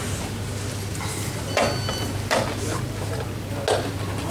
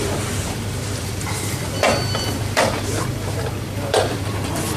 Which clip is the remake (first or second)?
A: second